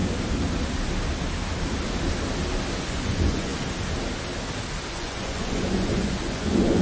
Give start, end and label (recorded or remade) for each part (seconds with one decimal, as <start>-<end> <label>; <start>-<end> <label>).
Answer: 0.0-2.8 recorded; 2.8-3.5 remade; 3.5-4.9 recorded; 4.9-6.8 remade